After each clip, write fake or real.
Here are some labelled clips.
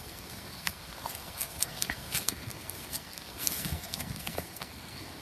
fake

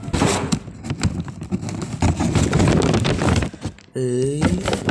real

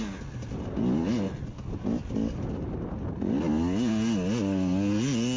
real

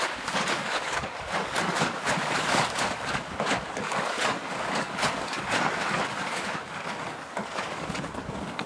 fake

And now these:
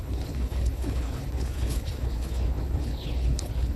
fake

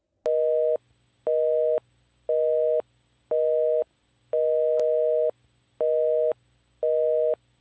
real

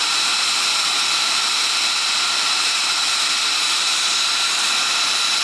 real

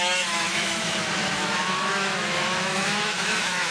fake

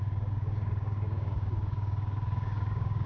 fake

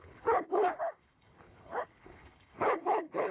fake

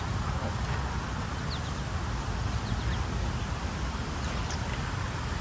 real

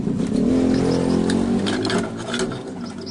real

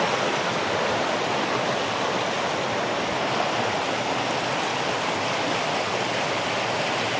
real